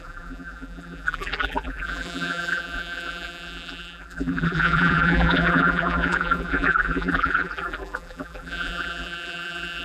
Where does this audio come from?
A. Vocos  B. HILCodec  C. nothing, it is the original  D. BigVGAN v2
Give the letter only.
D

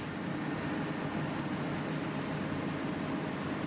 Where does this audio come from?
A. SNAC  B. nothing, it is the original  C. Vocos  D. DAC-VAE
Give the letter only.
B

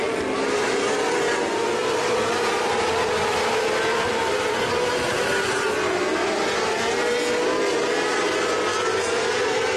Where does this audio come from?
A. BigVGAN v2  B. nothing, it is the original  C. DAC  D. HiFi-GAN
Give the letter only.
B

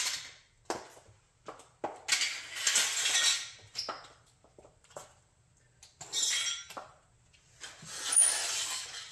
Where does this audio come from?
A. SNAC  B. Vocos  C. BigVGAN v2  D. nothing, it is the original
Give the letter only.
D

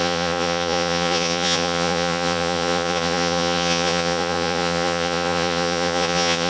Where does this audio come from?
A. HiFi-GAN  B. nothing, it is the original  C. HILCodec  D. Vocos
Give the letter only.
D